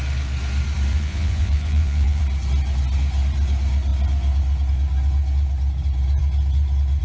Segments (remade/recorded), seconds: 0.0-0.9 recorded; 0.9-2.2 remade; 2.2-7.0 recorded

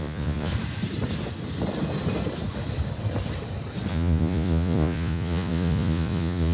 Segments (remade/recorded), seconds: 0.0-0.5 remade; 0.5-3.9 recorded; 3.9-6.5 remade

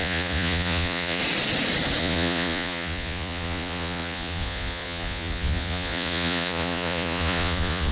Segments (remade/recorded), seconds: 0.0-1.2 remade; 1.2-2.0 recorded; 2.0-7.9 remade